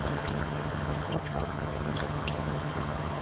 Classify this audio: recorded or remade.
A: remade